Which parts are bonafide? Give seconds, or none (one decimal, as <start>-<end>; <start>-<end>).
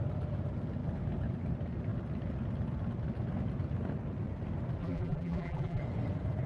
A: 0.0-4.8; 5.8-6.5